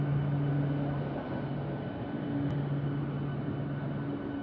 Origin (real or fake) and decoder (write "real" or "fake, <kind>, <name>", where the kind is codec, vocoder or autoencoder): real